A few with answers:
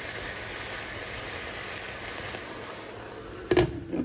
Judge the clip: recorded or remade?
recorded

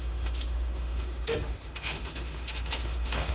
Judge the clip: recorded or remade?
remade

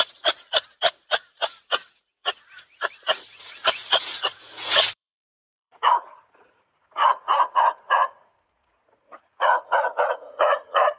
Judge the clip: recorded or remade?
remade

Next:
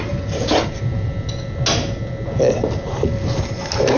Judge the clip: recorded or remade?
recorded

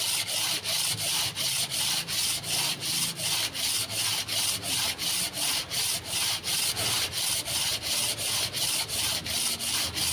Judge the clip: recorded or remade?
recorded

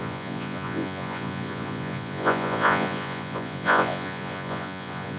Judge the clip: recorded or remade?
remade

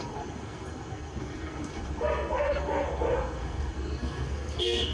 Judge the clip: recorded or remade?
remade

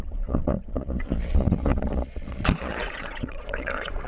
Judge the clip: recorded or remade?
remade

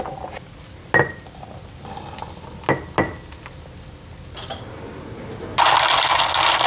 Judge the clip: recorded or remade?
recorded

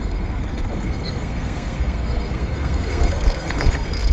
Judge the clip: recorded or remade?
remade